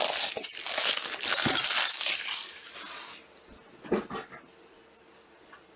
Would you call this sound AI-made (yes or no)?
no